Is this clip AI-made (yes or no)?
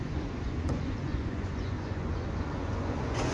yes